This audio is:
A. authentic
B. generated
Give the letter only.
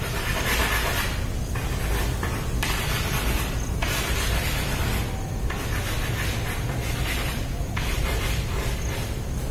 A